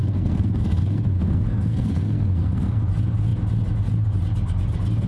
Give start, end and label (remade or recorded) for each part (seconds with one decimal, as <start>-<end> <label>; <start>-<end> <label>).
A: 0.0-2.8 remade; 2.8-5.1 recorded